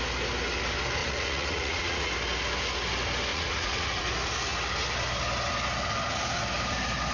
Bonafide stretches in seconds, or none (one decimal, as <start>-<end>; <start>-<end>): 0.0-1.0; 2.1-3.3; 4.0-7.1